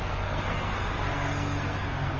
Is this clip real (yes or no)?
no